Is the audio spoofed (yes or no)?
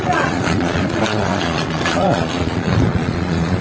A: yes